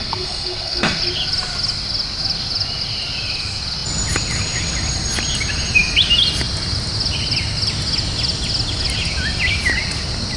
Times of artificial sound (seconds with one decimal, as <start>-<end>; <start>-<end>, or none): 0.0-1.0